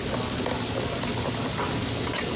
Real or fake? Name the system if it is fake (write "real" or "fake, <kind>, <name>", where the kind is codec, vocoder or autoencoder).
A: real